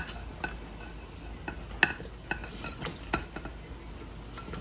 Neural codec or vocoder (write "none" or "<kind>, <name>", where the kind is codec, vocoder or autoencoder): none